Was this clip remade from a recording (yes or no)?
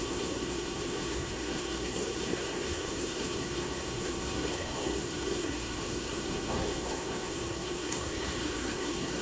yes